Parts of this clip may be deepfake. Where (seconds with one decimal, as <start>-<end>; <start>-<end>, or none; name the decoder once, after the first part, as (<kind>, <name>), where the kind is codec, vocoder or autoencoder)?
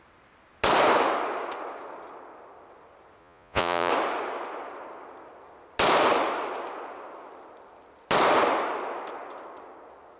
3.2-3.9 (vocoder, Vocos)